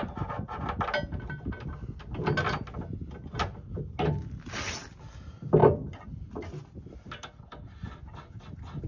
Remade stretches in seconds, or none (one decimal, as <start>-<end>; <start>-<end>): none